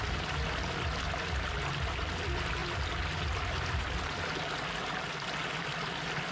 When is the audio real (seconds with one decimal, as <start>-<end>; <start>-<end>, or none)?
0.0-6.3